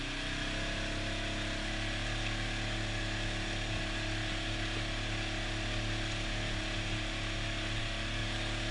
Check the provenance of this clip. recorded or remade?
recorded